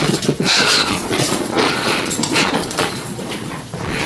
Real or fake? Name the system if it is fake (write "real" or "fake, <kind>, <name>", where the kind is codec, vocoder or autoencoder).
fake, vocoder, Vocos